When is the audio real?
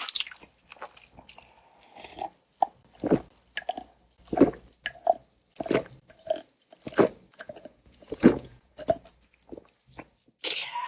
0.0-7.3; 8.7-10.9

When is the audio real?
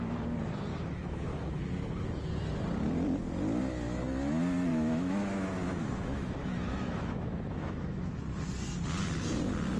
0.0-0.7; 1.6-4.7; 8.1-9.8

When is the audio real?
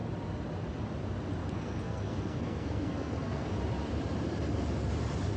0.0-1.4; 3.6-5.4